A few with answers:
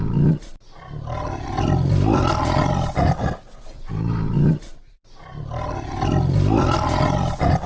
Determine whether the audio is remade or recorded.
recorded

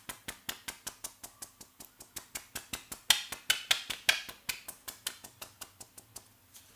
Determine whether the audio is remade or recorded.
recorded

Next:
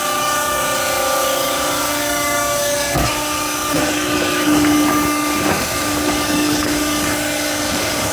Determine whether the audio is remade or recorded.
remade